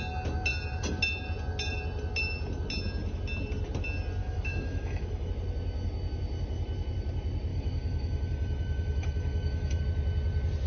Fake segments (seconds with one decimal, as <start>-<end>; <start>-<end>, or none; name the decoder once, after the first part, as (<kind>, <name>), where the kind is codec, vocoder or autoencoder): 4.2-5.3 (autoencoder, DAC-VAE); 7.5-9.8